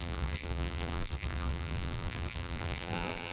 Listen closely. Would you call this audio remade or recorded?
remade